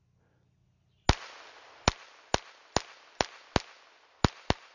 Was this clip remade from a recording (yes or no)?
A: no